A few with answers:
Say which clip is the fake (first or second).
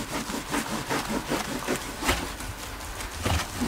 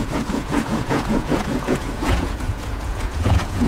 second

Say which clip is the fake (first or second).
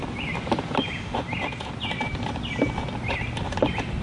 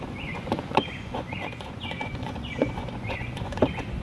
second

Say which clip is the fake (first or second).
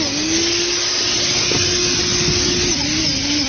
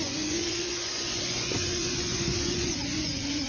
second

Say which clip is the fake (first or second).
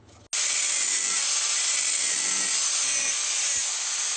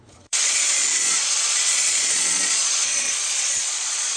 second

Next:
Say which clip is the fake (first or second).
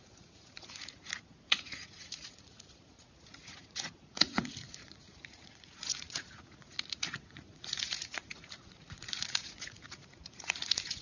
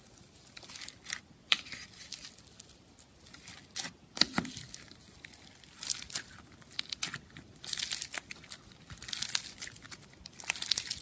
first